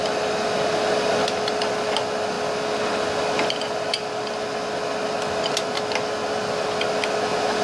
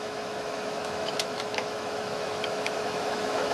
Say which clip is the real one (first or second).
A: first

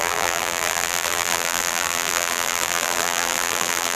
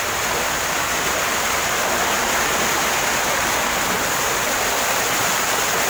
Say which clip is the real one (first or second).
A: second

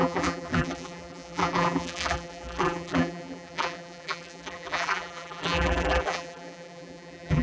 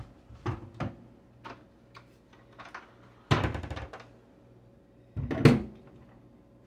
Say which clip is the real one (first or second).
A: second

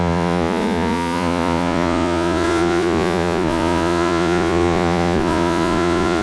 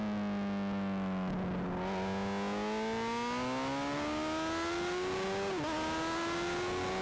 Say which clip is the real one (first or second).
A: second